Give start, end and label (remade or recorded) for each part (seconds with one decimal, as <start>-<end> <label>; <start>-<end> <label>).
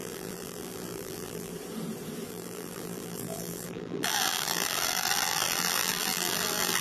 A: 0.0-1.5 remade; 1.5-2.3 recorded; 2.3-6.8 remade